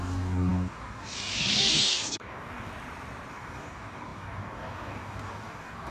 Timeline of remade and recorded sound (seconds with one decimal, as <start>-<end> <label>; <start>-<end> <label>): 0.0-2.7 remade; 2.7-3.3 recorded; 3.3-5.9 remade